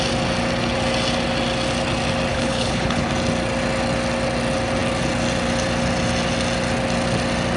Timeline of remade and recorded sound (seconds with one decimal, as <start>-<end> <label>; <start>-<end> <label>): 0.0-2.3 recorded; 2.3-3.1 remade; 3.1-7.6 recorded